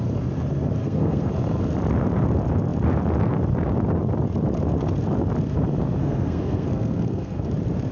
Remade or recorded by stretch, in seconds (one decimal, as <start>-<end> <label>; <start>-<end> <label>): 0.0-0.8 recorded; 0.8-1.3 remade; 1.3-6.0 recorded; 6.0-7.5 remade; 7.5-7.9 recorded

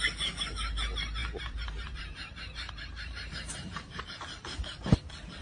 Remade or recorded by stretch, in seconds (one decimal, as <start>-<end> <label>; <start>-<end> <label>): 0.0-1.2 recorded; 1.2-4.0 remade; 4.0-5.4 recorded